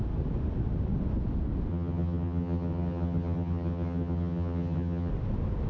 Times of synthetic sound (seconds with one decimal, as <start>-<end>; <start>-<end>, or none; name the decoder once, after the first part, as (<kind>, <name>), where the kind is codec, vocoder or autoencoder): 1.7-5.1 (vocoder, HiFi-GAN)

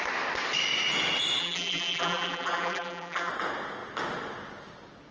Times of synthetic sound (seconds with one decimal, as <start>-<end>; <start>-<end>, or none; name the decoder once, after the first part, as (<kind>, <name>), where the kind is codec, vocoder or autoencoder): 1.4-3.3 (vocoder, BigVGAN v2)

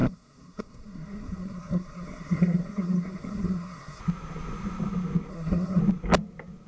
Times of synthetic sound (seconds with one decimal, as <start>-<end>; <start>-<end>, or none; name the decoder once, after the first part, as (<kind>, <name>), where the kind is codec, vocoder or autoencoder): 0.0-4.0 (codec, SNAC); 5.3-5.8

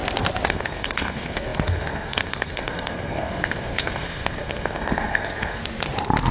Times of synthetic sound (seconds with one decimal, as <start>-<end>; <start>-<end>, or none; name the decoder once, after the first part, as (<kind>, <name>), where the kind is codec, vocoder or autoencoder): 0.5-5.6 (codec, SNAC)